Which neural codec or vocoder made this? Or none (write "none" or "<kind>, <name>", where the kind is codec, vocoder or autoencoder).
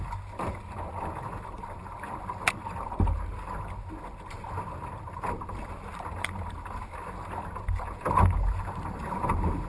none